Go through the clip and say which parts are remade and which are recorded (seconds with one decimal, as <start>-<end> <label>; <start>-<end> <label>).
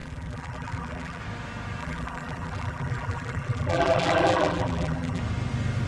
0.0-1.2 remade; 1.2-1.8 recorded; 1.8-5.2 remade; 5.2-5.9 recorded